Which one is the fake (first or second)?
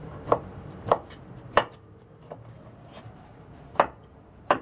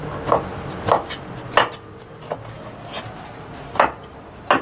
first